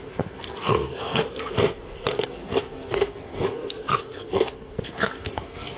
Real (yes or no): no